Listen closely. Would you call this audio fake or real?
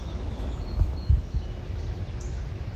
fake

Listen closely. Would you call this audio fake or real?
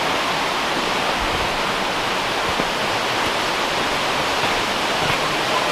real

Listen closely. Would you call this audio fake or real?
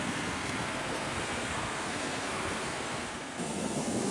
fake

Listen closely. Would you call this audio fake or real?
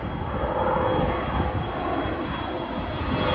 real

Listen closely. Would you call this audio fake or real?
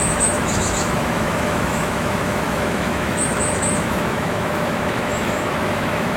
fake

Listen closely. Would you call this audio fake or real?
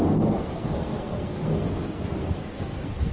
fake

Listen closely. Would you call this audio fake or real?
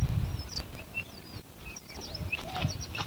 real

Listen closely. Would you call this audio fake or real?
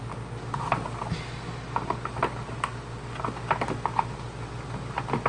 real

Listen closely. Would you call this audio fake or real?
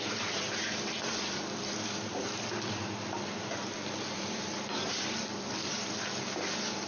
fake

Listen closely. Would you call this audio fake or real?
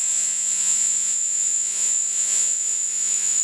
fake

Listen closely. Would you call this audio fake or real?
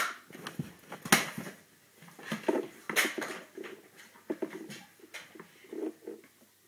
real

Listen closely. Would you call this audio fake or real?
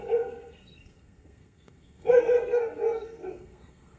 fake